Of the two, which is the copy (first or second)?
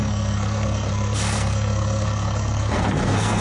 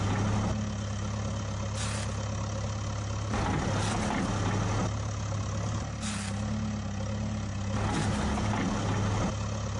first